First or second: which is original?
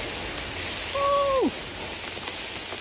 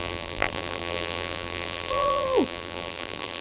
first